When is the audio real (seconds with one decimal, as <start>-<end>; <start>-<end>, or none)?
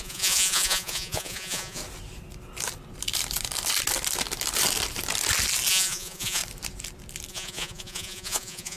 1.8-5.7; 6.4-7.3